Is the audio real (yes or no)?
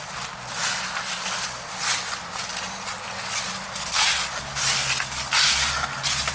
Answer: yes